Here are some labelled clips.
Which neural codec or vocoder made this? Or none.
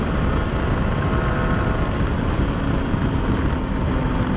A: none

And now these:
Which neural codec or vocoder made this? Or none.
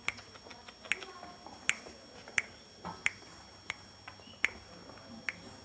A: none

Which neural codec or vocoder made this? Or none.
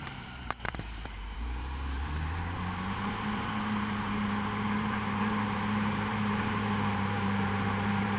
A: vocoder, BigVGAN v2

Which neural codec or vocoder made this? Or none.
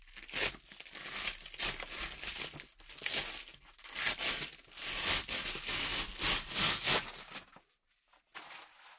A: none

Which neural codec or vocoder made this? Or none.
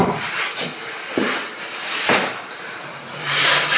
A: vocoder, BigVGAN v2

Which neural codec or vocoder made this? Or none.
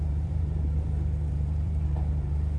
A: vocoder, BigVGAN v2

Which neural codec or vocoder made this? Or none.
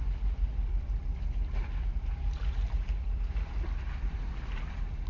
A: none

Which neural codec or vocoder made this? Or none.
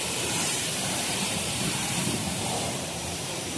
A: vocoder, BigVGAN v2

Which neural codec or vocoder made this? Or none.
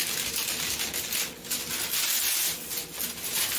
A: none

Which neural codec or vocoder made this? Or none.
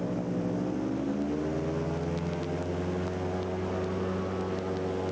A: none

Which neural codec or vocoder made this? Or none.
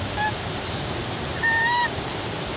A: vocoder, BigVGAN v2